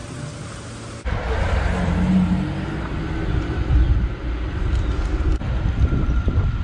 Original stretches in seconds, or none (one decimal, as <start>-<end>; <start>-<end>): 0.0-6.6